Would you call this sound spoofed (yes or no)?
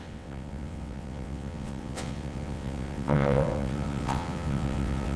yes